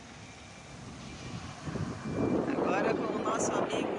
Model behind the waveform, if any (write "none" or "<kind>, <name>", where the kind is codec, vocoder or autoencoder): none